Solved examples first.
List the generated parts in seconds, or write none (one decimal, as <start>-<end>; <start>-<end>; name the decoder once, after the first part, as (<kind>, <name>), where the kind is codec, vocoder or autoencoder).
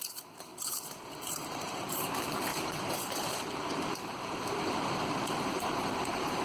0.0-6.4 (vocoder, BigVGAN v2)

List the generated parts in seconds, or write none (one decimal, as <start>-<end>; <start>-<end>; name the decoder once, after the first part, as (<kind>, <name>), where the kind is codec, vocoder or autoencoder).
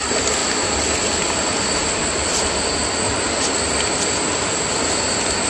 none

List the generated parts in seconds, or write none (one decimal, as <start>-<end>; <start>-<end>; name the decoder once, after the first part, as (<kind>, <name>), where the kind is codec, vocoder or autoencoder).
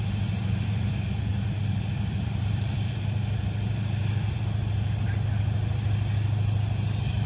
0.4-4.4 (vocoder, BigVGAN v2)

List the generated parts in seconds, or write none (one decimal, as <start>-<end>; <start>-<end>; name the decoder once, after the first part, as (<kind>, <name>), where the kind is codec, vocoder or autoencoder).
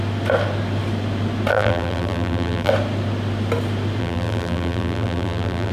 1.5-2.7 (vocoder, BigVGAN v2); 4.0-5.7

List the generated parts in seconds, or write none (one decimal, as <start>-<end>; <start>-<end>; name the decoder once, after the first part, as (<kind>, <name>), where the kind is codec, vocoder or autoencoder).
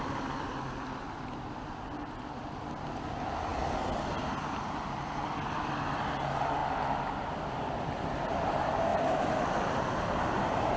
8.9-10.8 (vocoder, BigVGAN v2)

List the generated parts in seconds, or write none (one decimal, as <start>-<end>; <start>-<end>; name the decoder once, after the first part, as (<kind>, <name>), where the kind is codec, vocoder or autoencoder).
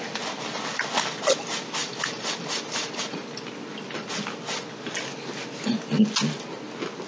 1.8-3.0 (vocoder, BigVGAN v2)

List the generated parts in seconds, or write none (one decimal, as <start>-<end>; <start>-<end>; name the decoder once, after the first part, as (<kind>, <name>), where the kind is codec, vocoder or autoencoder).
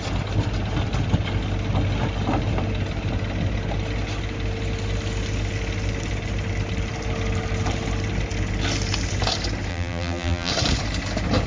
9.7-10.5 (vocoder, BigVGAN v2)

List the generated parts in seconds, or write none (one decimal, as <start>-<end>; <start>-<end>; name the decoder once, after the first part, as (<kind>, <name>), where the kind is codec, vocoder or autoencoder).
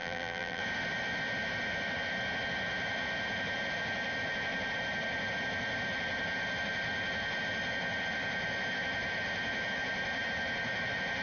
0.0-0.6 (vocoder, BigVGAN v2)